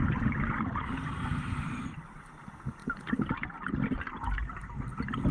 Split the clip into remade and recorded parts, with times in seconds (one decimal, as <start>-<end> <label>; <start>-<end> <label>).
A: 0.0-5.3 recorded